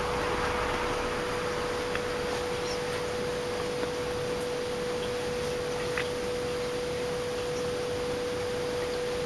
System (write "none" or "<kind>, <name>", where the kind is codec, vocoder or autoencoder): none